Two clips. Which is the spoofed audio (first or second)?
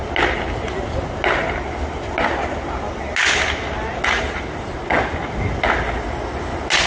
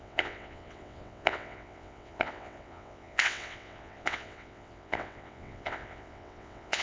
second